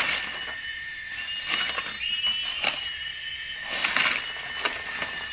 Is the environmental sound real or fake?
real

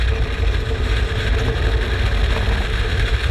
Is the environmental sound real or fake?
real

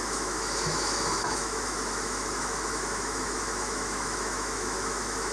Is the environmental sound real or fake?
fake